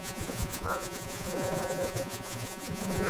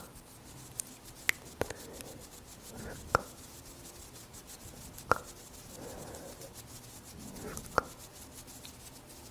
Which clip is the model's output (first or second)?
first